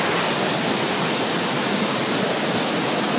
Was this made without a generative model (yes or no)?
yes